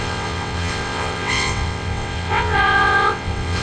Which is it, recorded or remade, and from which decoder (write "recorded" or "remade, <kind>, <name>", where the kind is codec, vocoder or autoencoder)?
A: remade, vocoder, WaveNeXt